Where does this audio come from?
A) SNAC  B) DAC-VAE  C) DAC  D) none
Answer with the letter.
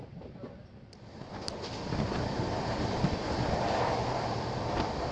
D